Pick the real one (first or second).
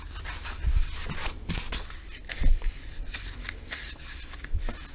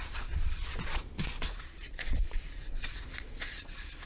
first